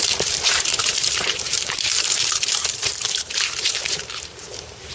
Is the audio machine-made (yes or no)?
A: yes